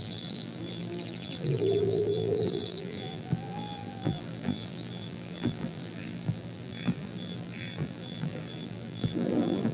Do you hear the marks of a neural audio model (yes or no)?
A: yes